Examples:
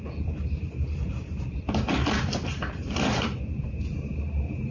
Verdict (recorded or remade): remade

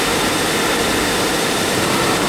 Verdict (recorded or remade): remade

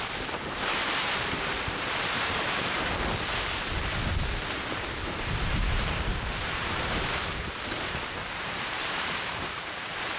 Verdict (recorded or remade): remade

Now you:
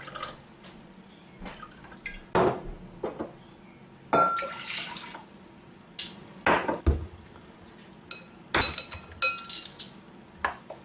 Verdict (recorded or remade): recorded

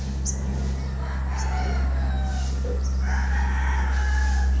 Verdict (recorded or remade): recorded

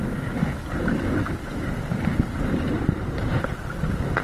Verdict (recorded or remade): recorded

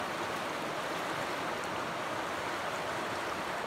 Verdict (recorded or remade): recorded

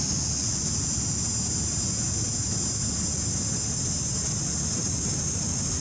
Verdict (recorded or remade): recorded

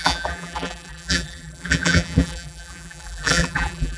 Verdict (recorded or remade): remade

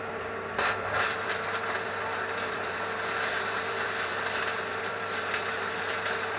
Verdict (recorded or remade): remade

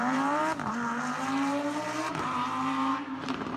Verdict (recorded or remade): remade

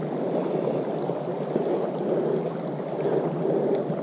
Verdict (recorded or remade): recorded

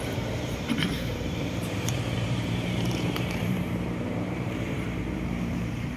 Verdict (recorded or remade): remade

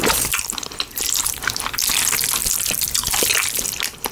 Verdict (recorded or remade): remade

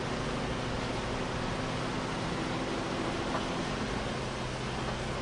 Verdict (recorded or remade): recorded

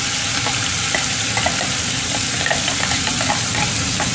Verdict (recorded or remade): remade